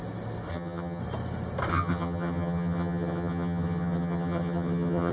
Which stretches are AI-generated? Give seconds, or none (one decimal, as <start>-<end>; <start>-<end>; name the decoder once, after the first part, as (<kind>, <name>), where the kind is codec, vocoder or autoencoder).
0.5-1.0 (vocoder, HiFi-GAN); 1.7-5.1